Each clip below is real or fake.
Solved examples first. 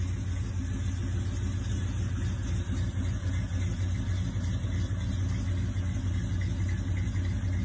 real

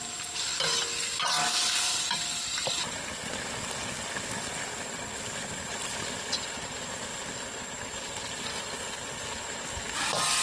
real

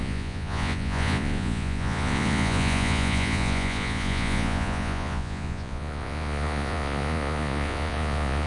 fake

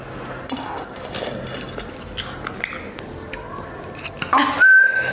real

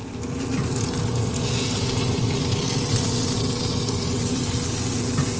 real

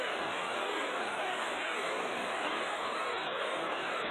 fake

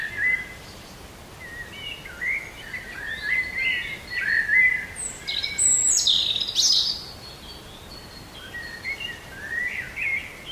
real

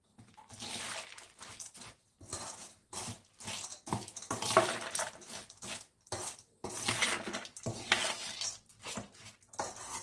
real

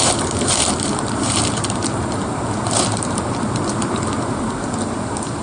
fake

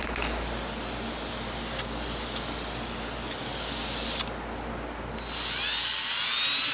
real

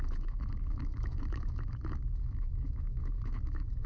fake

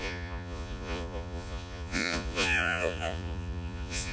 fake